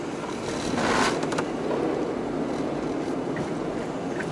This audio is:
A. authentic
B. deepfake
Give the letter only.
A